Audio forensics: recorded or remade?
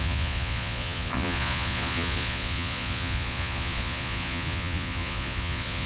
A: remade